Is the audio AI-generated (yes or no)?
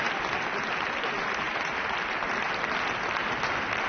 no